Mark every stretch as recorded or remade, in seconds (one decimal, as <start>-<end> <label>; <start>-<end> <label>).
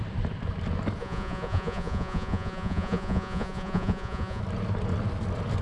0.0-1.0 recorded; 1.0-4.4 remade; 4.4-5.6 recorded